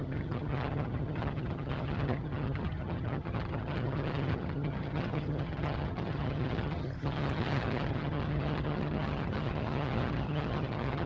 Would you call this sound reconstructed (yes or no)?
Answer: yes